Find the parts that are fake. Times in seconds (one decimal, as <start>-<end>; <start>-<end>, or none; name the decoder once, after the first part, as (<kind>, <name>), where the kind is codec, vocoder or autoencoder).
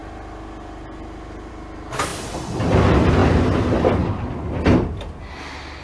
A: 0.0-1.5 (vocoder, BigVGAN v2)